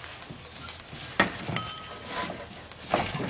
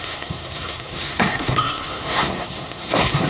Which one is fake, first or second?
second